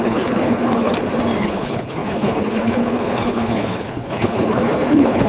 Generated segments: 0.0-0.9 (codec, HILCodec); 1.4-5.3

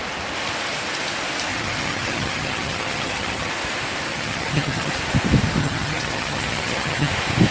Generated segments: 1.5-3.5 (vocoder, HiFi-GAN); 4.1-4.9; 5.6-7.1